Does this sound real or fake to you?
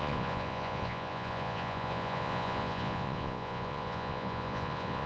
fake